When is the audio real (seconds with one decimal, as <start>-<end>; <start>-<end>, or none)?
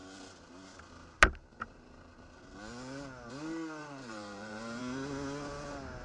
0.0-1.5; 2.4-3.8; 4.8-6.0